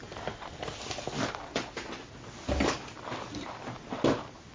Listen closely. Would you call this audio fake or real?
real